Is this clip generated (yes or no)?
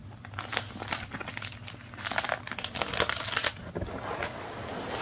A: no